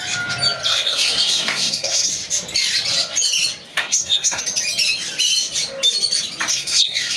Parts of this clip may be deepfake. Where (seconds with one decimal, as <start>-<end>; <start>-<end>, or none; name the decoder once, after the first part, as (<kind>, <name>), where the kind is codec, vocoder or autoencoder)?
0.7-2.1 (codec, SNAC); 3.7-4.4; 6.5-7.2